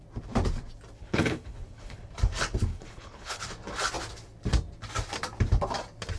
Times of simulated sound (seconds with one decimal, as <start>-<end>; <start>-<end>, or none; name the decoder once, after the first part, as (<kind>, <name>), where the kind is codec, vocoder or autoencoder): 1.0-2.1 (codec, HILCodec); 2.7-3.4